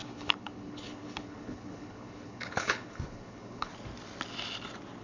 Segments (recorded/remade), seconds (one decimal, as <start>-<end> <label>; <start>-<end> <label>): 0.0-3.7 remade; 3.7-5.0 recorded